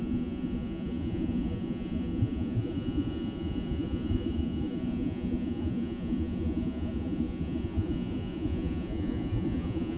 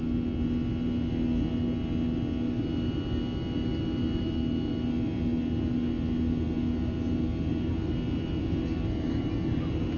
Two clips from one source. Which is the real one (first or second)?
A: second